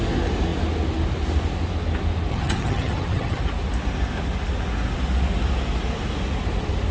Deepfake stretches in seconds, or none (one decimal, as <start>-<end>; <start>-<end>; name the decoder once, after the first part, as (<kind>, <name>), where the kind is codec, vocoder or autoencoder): 2.3-3.4 (vocoder, HiFi-GAN)